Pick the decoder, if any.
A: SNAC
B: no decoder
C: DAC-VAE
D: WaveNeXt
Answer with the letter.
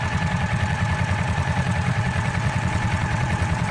D